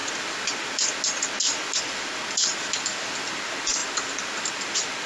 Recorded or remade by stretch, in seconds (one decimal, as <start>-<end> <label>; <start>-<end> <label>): 0.0-5.1 recorded